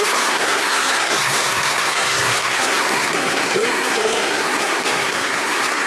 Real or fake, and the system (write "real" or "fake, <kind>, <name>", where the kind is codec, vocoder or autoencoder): fake, codec, SNAC